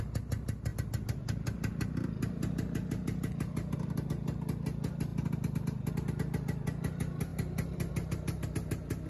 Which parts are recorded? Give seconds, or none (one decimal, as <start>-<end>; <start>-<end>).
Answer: 0.0-9.1